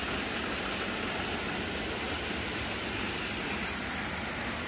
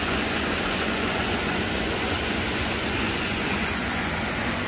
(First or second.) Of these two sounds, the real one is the first